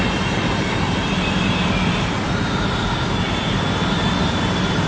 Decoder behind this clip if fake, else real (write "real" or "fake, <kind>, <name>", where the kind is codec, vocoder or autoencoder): fake, vocoder, BigVGAN v2